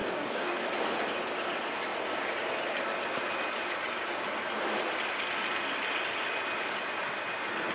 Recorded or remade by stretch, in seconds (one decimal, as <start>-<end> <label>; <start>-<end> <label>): 0.0-0.7 remade; 0.7-7.7 recorded